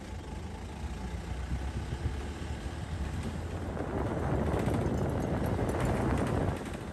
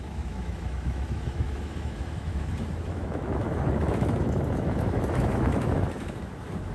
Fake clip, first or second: second